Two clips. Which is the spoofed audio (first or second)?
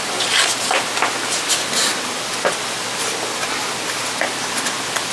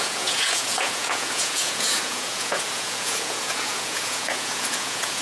second